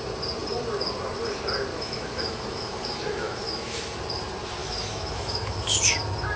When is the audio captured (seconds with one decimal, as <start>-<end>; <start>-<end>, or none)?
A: 0.0-1.7; 4.0-4.6; 5.9-6.4

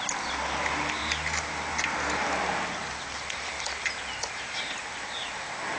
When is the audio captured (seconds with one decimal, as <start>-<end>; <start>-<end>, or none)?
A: 0.0-5.8

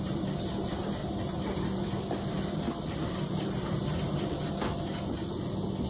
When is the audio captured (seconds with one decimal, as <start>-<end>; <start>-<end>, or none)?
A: 0.0-1.0; 4.5-5.9

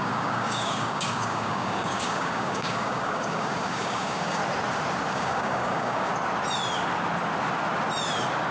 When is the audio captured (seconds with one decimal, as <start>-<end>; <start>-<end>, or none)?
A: 4.4-5.1; 6.1-8.5

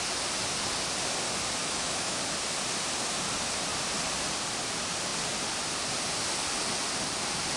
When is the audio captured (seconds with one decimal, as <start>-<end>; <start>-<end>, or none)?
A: 0.0-1.6; 2.2-7.6